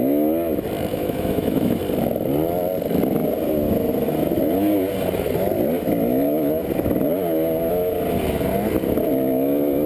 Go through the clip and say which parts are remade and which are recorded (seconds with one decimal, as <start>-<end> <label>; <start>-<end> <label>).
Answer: 0.0-0.9 recorded; 0.9-1.8 remade; 1.8-9.9 recorded